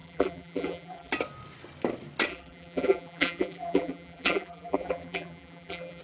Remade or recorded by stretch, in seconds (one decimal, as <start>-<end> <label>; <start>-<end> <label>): 0.0-1.1 remade; 1.1-2.3 recorded; 2.3-6.0 remade